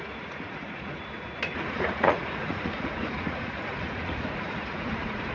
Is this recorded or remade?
remade